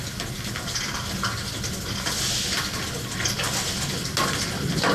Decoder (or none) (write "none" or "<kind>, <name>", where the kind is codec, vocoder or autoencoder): none